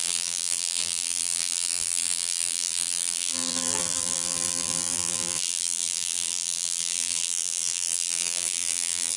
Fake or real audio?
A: fake